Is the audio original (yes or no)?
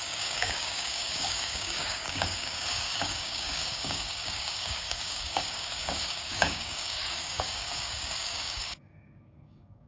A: no